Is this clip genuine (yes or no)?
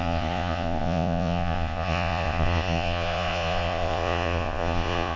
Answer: no